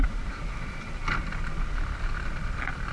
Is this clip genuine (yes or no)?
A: yes